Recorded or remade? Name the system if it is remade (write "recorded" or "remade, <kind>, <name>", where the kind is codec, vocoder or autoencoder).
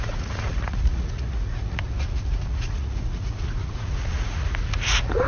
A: remade, vocoder, Vocos